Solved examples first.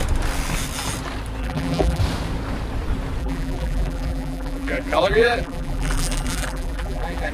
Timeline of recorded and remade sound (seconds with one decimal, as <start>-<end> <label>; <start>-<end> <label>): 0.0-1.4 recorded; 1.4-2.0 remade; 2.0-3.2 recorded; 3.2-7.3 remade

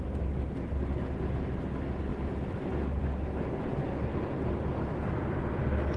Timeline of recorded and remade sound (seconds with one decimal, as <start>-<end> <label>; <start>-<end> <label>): 0.0-6.0 recorded

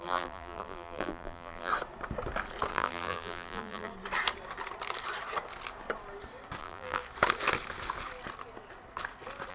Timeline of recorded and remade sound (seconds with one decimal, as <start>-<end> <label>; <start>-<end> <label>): 0.0-1.7 remade; 1.7-2.7 recorded; 2.7-3.9 remade; 3.9-6.6 recorded; 6.6-7.0 remade; 7.0-9.5 recorded

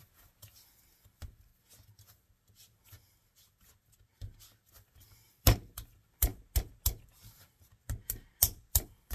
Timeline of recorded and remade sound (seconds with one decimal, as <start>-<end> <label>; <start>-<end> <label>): 0.0-1.5 remade; 1.5-4.7 recorded; 4.7-6.3 remade; 6.3-8.7 recorded; 8.7-9.1 remade

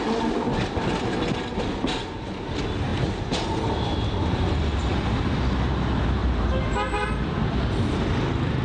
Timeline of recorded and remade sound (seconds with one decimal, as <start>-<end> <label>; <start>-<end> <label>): 0.0-2.9 recorded; 2.9-4.2 remade; 4.2-6.2 recorded; 6.2-7.1 remade; 7.1-8.6 recorded

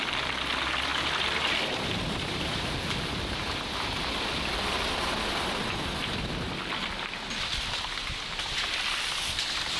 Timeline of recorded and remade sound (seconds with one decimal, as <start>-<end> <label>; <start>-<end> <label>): 0.0-9.8 remade

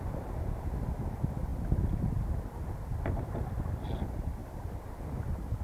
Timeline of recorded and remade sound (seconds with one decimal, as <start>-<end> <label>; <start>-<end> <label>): 0.0-4.4 recorded; 4.4-5.6 remade